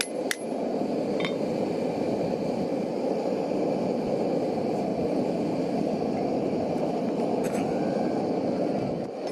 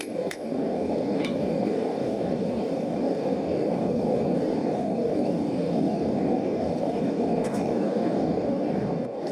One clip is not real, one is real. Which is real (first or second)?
first